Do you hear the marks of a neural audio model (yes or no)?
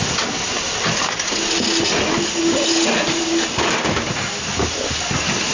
no